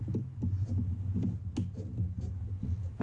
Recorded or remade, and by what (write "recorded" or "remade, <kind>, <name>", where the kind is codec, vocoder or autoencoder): recorded